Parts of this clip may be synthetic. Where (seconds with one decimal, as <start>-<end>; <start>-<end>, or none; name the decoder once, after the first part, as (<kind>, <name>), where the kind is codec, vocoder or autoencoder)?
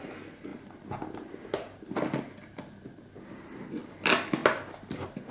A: none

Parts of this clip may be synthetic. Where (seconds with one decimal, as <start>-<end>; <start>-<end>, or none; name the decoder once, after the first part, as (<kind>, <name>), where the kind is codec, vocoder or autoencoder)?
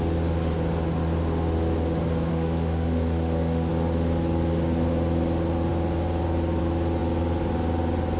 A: 2.3-3.7 (autoencoder, DAC-VAE)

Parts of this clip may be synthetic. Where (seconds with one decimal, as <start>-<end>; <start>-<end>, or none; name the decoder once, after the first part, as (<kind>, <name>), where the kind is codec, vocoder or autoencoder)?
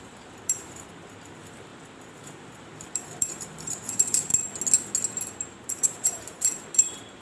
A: 0.0-4.3 (vocoder, BigVGAN v2); 5.2-7.2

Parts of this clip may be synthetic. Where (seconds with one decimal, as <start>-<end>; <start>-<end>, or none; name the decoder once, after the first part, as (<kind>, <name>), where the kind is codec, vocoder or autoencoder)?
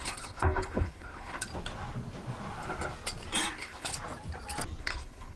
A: 0.0-1.5 (codec, HILCodec); 3.5-3.9; 4.8-5.4